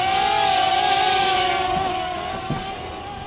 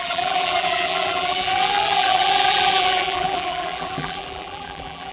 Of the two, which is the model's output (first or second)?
second